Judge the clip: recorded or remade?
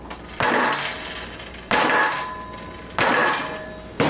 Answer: recorded